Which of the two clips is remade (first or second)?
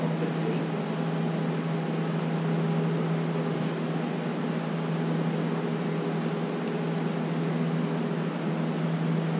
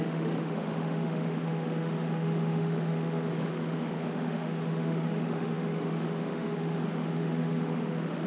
second